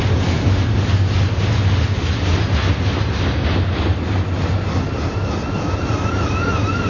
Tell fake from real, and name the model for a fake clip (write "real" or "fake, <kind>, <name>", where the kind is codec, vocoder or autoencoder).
real